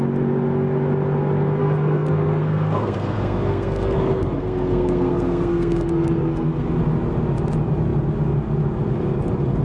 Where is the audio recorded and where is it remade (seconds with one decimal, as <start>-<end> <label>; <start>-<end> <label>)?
0.0-1.6 recorded; 1.6-6.7 remade; 6.7-9.6 recorded